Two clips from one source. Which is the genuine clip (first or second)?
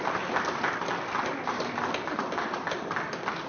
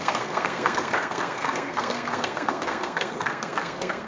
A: first